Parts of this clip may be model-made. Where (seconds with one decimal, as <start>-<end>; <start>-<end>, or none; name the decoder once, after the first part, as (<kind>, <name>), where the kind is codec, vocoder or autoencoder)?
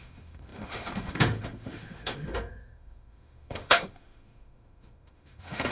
0.0-5.7 (autoencoder, DAC-VAE)